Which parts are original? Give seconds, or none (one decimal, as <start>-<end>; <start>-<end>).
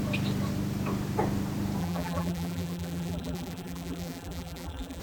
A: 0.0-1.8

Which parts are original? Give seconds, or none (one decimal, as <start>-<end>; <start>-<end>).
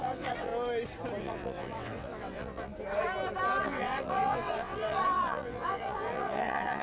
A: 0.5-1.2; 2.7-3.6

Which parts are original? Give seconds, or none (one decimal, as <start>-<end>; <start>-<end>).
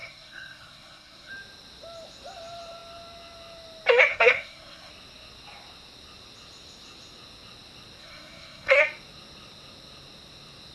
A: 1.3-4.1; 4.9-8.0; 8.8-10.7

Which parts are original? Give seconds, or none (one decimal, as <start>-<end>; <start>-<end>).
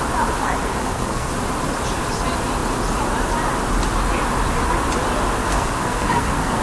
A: 0.0-0.4; 1.3-5.4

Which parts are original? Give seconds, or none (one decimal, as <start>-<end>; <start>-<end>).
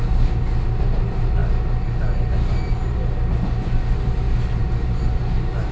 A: 0.0-1.4; 2.3-2.8; 3.3-5.7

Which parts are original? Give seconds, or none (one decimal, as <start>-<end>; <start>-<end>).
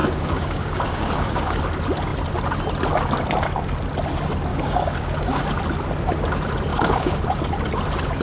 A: 1.6-4.5; 5.4-6.7; 7.2-8.2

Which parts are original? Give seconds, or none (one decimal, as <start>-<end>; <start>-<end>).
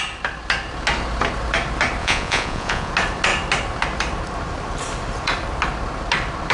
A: 0.0-2.0; 2.9-6.5